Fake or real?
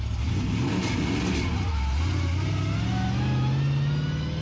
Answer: real